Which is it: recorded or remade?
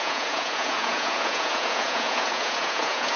remade